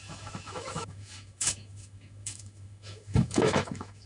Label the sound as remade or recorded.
remade